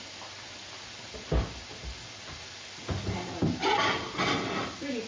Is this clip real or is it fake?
real